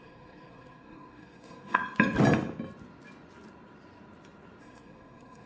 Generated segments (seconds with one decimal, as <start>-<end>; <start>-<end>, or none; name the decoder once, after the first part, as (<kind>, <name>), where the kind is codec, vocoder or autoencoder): 0.0-1.8 (codec, SNAC); 4.6-5.5